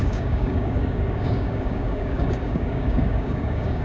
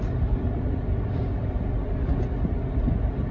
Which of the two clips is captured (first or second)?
second